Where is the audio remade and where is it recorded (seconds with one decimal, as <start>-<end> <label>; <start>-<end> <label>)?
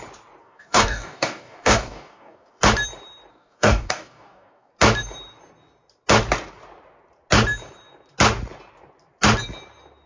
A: 0.0-0.4 recorded; 0.4-2.6 remade; 2.6-3.3 recorded; 3.3-4.7 remade; 4.7-10.1 recorded